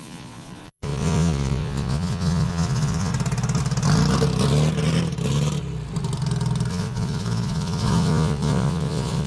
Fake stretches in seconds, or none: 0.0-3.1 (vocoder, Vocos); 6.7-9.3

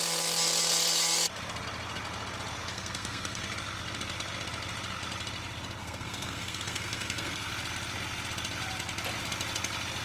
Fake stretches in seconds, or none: 2.7-3.4 (codec, SNAC); 5.8-7.5